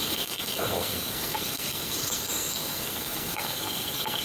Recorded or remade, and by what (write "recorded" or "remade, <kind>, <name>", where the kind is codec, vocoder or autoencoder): remade, codec, SNAC